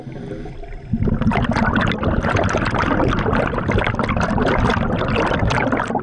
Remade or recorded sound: recorded